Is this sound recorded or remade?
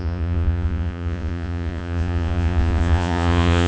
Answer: remade